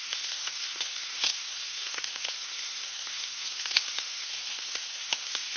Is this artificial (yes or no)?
yes